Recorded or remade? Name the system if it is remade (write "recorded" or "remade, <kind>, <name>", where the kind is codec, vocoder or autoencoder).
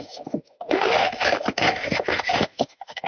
remade, autoencoder, DAC-VAE